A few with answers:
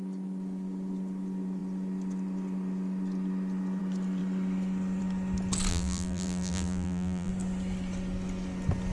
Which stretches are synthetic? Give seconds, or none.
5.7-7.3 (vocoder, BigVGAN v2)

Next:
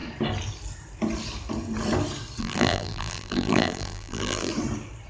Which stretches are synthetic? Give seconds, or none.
2.4-4.5 (vocoder, BigVGAN v2)

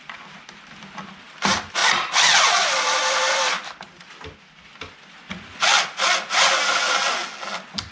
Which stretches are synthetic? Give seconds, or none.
1.8-6.5 (vocoder, BigVGAN v2)

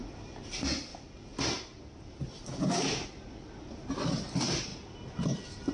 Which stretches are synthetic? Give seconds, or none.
none

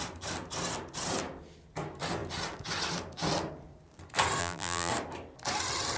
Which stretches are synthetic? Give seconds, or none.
4.4-4.9 (vocoder, BigVGAN v2)

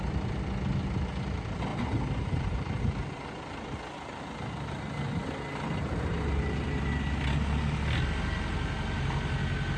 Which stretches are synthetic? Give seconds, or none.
1.7-3.3 (vocoder, BigVGAN v2)

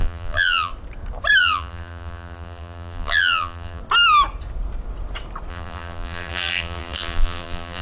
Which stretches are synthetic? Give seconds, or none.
0.0-0.7 (vocoder, BigVGAN v2); 1.4-3.8; 5.5-7.8

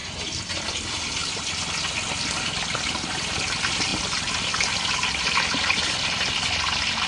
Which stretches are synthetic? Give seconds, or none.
0.7-7.1 (vocoder, BigVGAN v2)